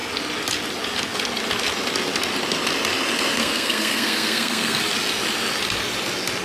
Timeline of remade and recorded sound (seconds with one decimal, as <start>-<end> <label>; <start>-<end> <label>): 0.0-3.4 recorded; 3.4-4.8 remade; 4.8-6.4 recorded